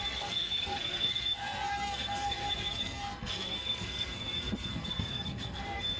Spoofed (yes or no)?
yes